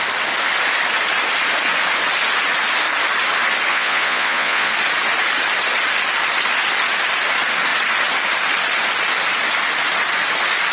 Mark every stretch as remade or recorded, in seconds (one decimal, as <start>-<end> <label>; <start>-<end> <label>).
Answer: 0.0-3.7 recorded; 3.7-4.7 remade; 4.7-10.7 recorded